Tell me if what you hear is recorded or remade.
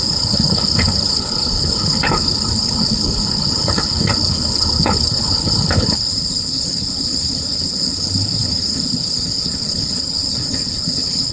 remade